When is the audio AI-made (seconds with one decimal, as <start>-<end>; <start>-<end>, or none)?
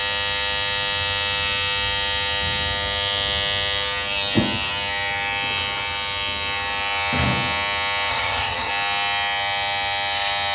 8.1-8.7